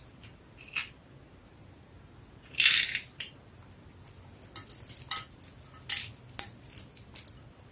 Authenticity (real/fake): real